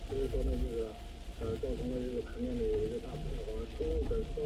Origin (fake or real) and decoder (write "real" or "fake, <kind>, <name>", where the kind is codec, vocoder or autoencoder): real